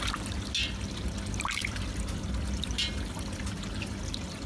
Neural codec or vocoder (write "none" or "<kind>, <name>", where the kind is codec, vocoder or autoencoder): none